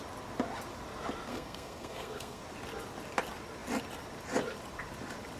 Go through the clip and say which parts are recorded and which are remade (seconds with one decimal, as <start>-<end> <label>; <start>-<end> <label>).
0.0-1.3 recorded; 1.3-2.4 remade; 2.4-5.4 recorded